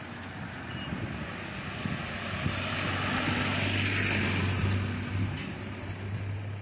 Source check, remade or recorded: recorded